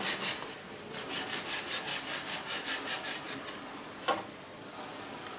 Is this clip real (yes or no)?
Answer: yes